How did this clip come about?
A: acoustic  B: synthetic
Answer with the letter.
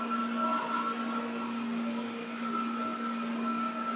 A